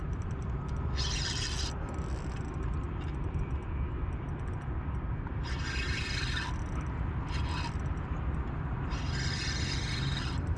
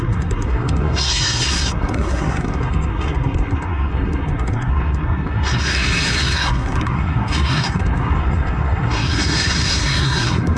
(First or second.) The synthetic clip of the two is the second